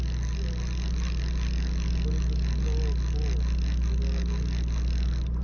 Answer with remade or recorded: recorded